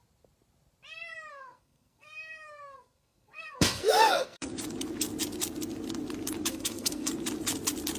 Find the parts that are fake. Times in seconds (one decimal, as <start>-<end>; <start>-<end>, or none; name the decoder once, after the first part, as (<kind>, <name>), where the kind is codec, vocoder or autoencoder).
1.3-4.5 (codec, SNAC); 6.5-7.1